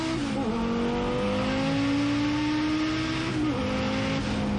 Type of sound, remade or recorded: recorded